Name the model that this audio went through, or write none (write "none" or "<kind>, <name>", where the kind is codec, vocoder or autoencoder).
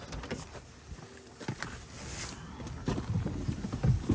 none